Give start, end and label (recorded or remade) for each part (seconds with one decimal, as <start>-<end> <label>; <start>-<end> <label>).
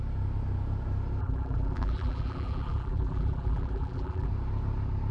0.0-1.2 recorded; 1.2-4.3 remade; 4.3-5.1 recorded